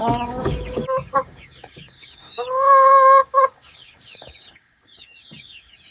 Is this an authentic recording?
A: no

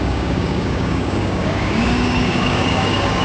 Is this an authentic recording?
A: no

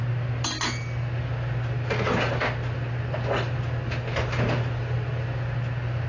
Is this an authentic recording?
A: yes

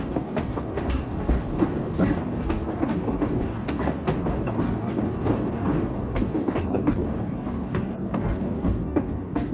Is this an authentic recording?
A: no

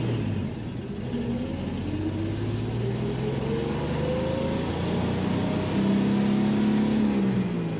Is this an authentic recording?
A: yes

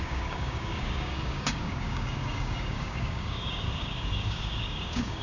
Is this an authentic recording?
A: no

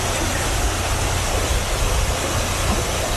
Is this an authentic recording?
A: yes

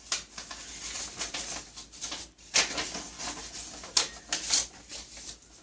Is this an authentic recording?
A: yes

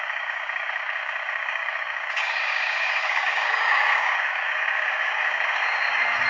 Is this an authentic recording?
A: no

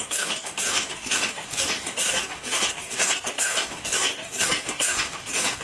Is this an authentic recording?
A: no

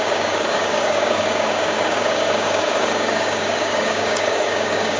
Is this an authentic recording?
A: no